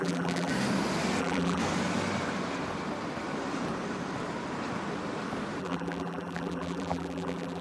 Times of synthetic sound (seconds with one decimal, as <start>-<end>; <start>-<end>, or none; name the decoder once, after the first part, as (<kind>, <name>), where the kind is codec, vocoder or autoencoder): 0.0-0.5 (vocoder, BigVGAN v2); 1.2-1.6; 5.6-7.6